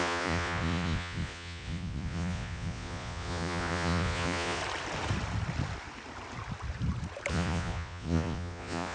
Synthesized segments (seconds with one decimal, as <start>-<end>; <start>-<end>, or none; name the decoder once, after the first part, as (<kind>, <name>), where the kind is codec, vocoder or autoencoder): 0.0-4.6 (vocoder, Vocos); 7.3-8.9